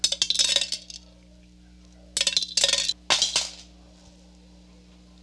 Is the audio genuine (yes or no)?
yes